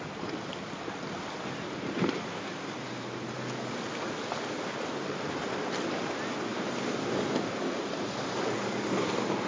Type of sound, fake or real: real